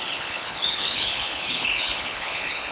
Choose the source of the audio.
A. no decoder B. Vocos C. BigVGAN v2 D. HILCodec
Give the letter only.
D